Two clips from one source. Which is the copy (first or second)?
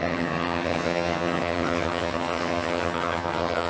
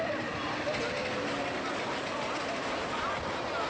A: first